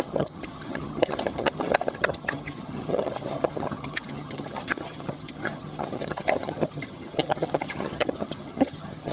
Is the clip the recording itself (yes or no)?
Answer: no